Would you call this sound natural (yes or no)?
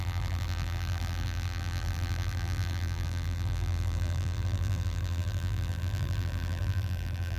no